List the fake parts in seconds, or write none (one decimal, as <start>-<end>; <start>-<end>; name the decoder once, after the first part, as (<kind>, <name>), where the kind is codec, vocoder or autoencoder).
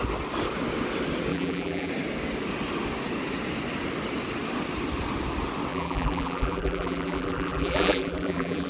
1.3-1.9 (vocoder, BigVGAN v2); 5.7-8.7